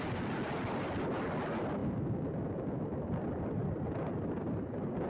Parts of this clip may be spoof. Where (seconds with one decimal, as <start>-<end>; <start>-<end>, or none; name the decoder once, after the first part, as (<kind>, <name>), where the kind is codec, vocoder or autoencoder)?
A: none